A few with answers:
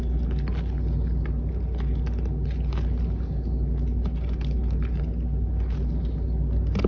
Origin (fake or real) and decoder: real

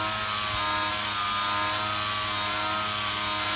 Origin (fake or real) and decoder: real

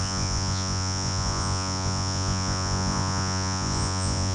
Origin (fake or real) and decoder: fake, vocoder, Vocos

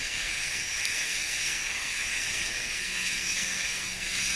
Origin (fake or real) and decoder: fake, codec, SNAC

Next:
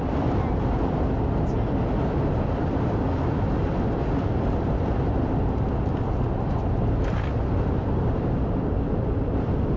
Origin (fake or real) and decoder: real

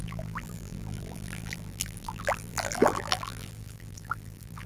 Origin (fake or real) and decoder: fake, vocoder, BigVGAN v2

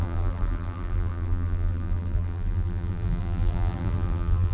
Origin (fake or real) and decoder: fake, vocoder, BigVGAN v2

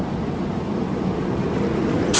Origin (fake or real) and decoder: real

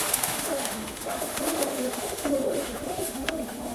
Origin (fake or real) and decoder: fake, autoencoder, DAC-VAE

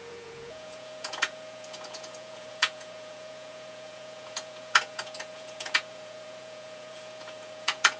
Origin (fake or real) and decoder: fake, vocoder, Vocos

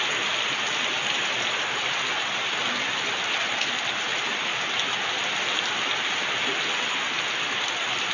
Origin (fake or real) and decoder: real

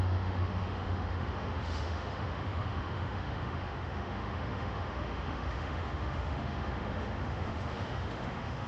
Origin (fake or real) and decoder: fake, autoencoder, DAC-VAE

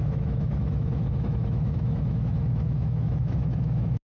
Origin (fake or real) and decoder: fake, autoencoder, DAC-VAE